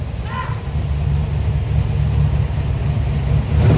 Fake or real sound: real